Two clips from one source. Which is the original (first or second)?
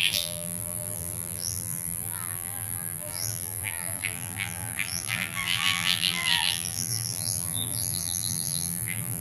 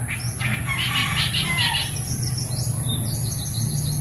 second